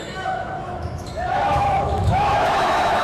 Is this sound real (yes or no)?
no